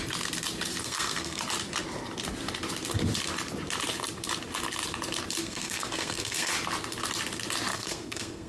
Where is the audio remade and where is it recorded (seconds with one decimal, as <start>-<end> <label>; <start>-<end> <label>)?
0.0-0.8 recorded; 0.8-1.4 remade; 1.4-5.4 recorded; 5.4-6.5 remade; 6.5-7.7 recorded; 7.7-8.5 remade